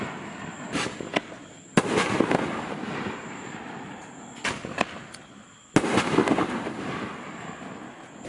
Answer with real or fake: real